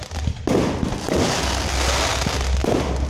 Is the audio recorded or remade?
recorded